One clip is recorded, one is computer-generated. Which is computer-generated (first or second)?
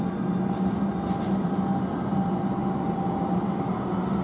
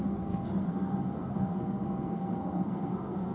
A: second